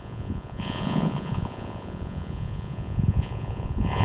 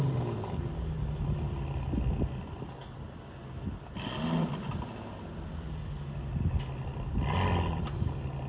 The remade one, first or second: first